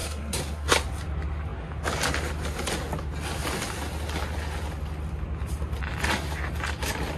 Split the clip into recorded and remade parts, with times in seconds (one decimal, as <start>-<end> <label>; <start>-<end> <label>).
0.0-0.7 remade; 0.7-7.2 recorded